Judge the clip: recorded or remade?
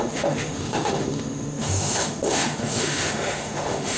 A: remade